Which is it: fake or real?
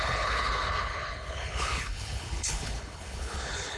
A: fake